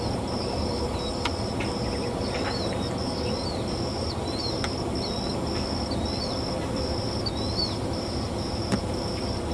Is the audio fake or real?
real